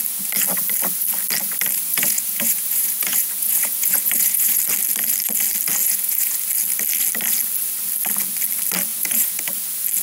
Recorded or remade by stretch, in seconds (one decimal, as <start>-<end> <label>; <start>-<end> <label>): 0.0-1.9 recorded; 1.9-4.6 remade; 4.6-5.8 recorded; 5.8-6.4 remade; 6.4-8.9 recorded; 8.9-9.4 remade; 9.4-10.0 recorded